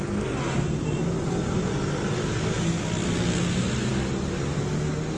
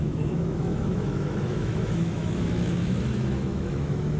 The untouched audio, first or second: first